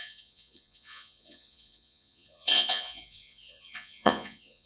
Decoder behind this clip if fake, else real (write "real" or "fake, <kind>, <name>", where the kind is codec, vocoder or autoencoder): fake, vocoder, Vocos